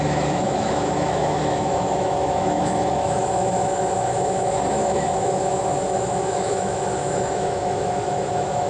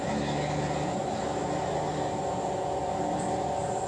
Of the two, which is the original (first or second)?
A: second